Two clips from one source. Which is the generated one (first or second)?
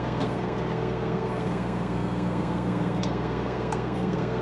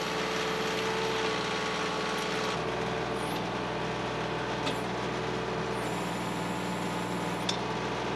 first